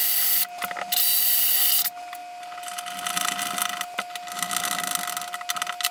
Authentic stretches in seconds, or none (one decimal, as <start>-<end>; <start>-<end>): 0.0-5.9